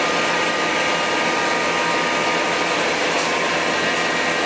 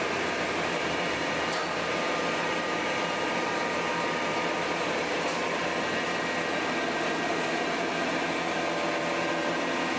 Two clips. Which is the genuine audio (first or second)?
first